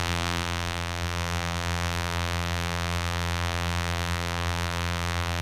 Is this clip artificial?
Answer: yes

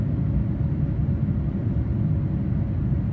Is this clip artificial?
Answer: no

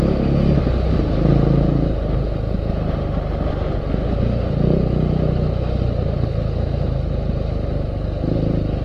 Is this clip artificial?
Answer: no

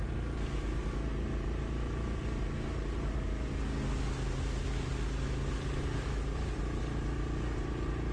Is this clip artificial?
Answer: no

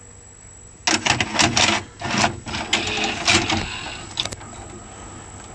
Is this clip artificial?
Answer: no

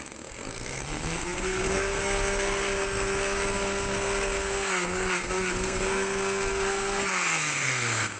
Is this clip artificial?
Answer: yes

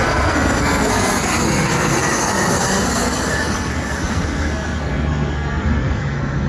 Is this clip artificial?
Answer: yes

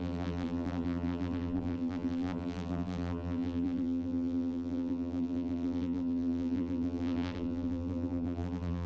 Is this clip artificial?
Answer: yes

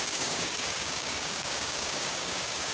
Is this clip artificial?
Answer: yes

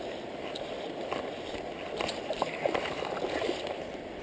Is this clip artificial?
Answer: no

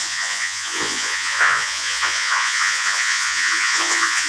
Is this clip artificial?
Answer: yes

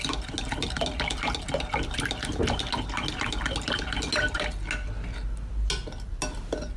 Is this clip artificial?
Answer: no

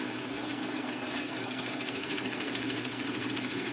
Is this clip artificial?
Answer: yes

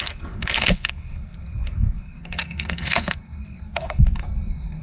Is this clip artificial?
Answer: yes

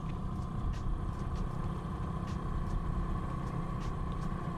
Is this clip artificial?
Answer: yes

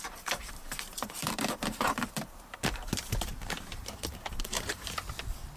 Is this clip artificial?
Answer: yes